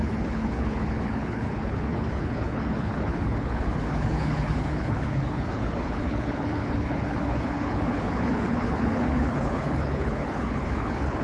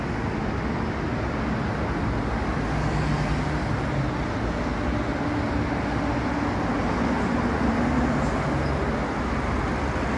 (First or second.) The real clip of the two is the second